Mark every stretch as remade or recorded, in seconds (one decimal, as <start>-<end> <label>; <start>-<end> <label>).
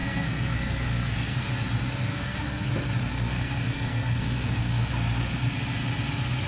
0.0-1.5 remade; 1.5-2.1 recorded; 2.1-2.7 remade; 2.7-3.1 recorded; 3.1-4.9 remade; 4.9-6.5 recorded